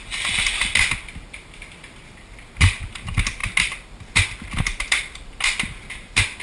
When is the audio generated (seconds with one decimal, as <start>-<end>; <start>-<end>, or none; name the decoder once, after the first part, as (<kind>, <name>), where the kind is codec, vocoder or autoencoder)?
none